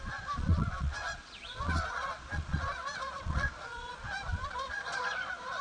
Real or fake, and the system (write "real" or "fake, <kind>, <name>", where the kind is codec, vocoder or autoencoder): fake, vocoder, Vocos